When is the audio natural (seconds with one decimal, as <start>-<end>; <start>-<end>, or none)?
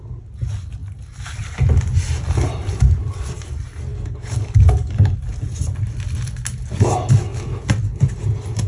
0.0-3.9; 5.2-8.7